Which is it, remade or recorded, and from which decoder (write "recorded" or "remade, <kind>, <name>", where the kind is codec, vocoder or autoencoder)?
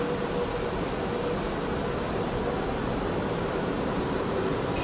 recorded